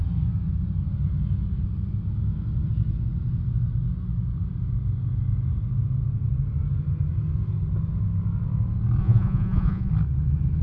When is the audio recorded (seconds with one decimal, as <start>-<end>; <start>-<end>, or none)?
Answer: 0.0-9.0; 9.9-10.6